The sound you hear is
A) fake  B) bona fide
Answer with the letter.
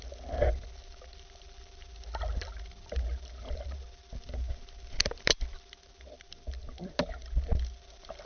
B